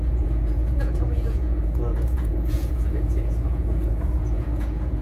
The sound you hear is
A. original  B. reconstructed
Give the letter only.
B